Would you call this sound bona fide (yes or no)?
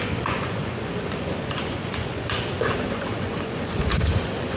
no